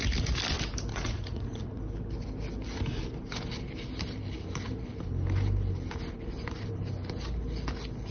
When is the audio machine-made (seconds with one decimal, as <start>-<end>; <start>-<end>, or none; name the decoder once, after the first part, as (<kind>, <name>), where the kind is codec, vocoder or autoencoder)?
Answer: 0.9-1.8 (vocoder, Vocos)